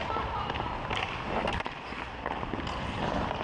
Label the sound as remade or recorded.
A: remade